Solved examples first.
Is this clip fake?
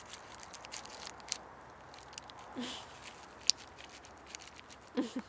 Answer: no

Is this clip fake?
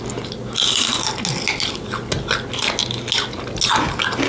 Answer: no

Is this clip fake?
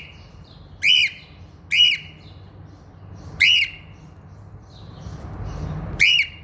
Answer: no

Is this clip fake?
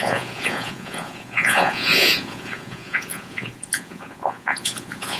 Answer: yes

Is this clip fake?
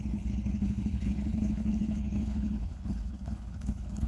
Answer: yes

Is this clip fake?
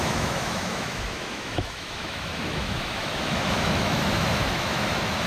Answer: yes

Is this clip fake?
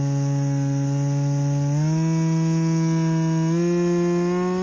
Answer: no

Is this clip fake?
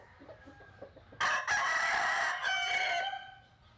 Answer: no